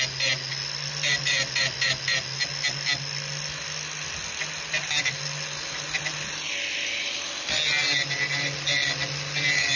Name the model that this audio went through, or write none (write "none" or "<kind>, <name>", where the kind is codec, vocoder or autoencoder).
none